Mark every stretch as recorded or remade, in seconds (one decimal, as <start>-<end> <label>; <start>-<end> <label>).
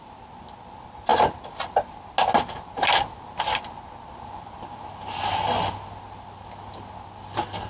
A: 0.0-7.7 recorded